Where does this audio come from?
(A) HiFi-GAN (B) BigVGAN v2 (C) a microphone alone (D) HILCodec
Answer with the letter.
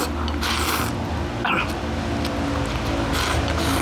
C